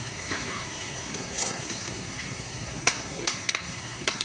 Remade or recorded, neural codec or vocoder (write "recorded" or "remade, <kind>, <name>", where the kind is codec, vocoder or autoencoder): remade, codec, SNAC